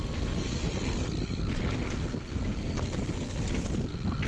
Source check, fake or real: real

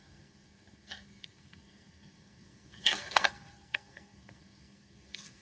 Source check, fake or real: fake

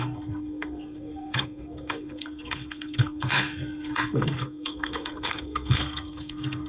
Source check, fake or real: fake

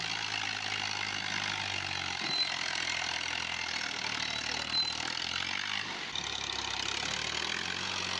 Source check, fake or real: real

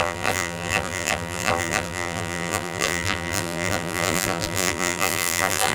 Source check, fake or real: fake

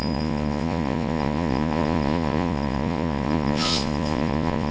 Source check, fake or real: fake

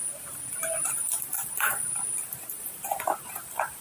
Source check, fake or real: fake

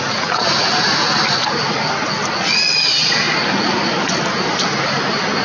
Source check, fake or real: real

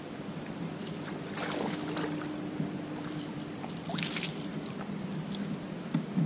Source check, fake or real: fake